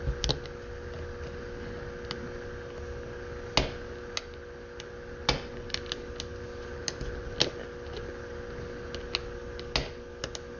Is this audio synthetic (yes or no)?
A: no